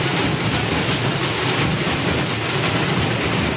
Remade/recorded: recorded